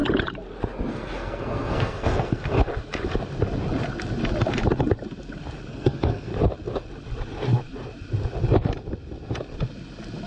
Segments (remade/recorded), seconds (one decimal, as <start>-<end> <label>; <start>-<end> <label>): 0.0-0.9 recorded; 0.9-2.7 remade; 2.7-5.7 recorded; 5.7-6.3 remade; 6.3-10.3 recorded